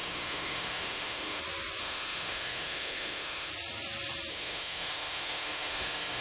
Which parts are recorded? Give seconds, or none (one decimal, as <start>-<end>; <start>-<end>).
1.4-1.8; 3.5-4.3